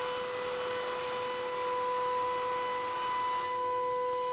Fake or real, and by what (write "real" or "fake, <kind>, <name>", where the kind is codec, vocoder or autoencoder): real